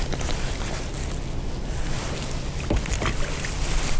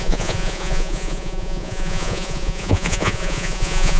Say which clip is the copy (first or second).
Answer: second